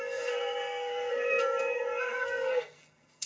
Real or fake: fake